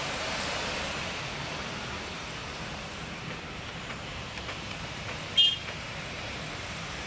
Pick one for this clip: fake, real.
fake